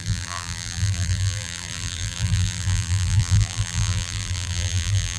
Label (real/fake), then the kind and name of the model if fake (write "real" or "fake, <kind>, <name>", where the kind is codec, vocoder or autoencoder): fake, vocoder, BigVGAN v2